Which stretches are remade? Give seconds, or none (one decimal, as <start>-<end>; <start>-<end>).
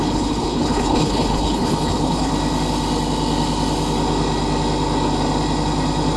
0.0-2.3